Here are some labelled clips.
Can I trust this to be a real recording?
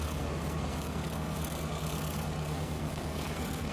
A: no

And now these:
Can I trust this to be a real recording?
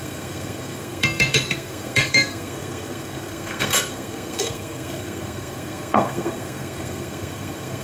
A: no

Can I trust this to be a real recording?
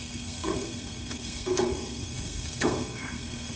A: no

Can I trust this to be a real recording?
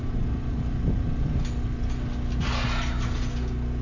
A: yes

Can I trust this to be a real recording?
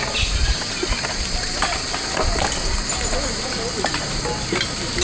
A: yes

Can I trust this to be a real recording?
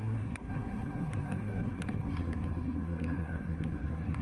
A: no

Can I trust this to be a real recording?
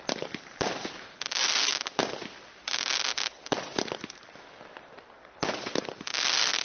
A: yes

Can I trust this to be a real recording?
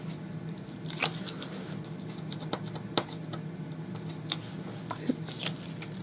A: yes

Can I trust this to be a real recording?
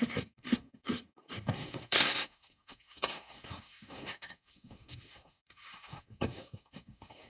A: no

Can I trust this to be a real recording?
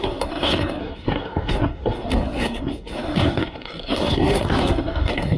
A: no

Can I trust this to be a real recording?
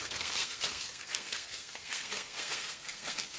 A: no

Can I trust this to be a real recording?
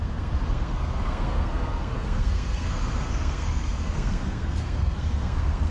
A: no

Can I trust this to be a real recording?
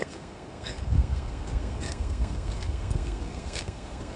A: no